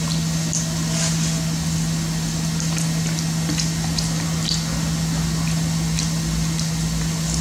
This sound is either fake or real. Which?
real